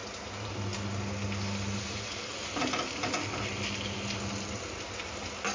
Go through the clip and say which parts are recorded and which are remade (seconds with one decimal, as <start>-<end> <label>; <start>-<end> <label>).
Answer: 0.0-5.5 recorded